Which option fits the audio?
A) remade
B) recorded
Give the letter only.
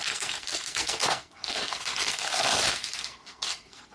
A